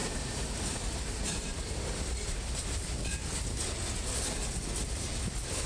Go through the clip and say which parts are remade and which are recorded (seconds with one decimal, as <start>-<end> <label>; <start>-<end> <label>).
0.0-3.4 remade; 3.4-5.7 recorded

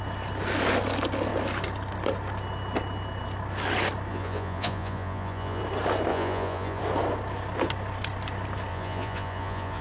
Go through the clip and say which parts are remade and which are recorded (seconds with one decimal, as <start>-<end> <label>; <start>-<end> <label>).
0.0-4.1 recorded; 4.1-5.6 remade; 5.6-6.1 recorded; 6.1-6.8 remade; 6.8-8.7 recorded; 8.7-9.8 remade

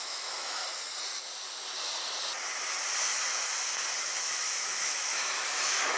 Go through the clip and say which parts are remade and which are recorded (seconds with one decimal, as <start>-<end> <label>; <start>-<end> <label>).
0.0-0.6 remade; 0.6-4.2 recorded; 4.2-6.0 remade

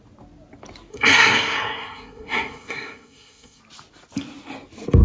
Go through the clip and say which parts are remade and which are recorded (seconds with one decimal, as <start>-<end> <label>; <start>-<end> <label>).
0.0-0.9 recorded; 0.9-3.6 remade; 3.6-5.0 recorded

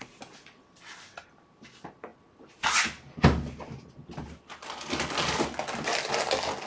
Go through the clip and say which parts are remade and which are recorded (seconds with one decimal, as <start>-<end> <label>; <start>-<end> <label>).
0.0-6.7 recorded

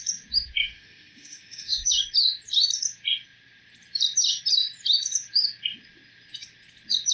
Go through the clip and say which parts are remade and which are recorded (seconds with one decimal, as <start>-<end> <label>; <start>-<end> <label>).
0.0-0.6 recorded; 0.6-1.9 remade; 1.9-7.1 recorded

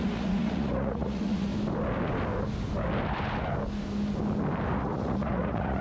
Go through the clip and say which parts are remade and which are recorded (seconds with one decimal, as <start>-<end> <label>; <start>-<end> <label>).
0.0-1.5 remade; 1.5-4.7 recorded; 4.7-5.8 remade